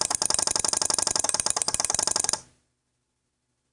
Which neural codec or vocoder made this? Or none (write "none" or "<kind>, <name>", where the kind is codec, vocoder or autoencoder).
none